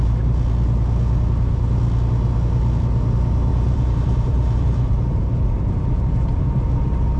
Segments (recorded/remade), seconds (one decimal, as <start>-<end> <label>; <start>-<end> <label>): 0.0-3.5 recorded; 3.5-6.5 remade; 6.5-7.2 recorded